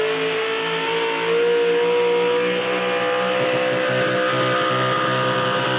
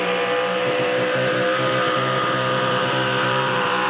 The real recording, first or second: first